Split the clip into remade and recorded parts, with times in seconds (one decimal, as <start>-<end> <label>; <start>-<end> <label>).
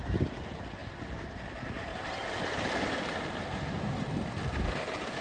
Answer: 0.0-5.2 recorded